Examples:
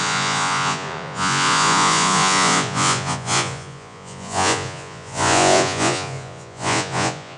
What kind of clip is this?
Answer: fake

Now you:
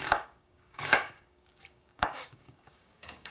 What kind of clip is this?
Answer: fake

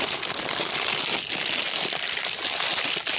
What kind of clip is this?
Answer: real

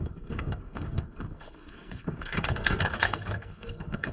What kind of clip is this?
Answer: fake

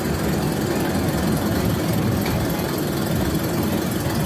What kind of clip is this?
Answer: real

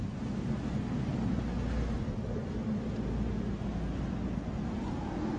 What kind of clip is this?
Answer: real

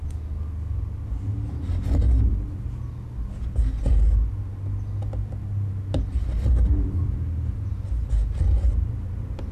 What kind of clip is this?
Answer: real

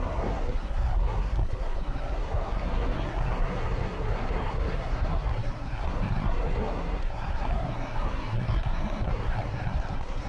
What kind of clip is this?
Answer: fake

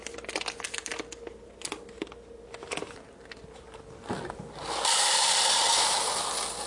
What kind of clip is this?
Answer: real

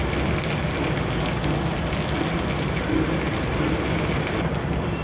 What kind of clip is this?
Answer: real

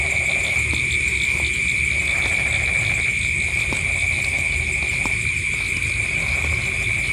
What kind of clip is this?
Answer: real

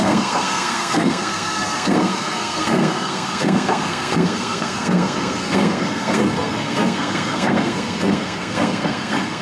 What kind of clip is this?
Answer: fake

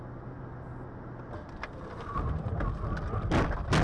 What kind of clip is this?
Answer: real